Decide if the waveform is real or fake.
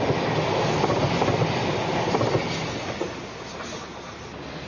real